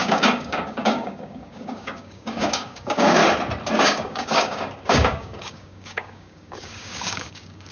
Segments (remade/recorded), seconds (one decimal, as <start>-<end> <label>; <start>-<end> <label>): 0.0-3.2 remade; 3.2-3.7 recorded; 3.7-7.7 remade